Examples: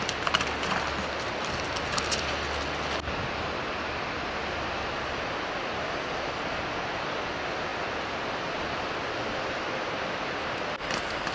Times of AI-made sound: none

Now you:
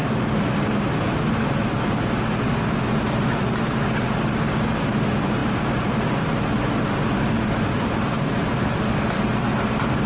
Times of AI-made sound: none

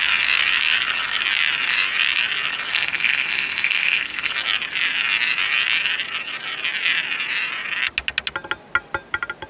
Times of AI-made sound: 2.7-4.3